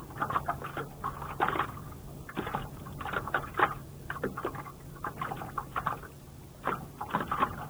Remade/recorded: recorded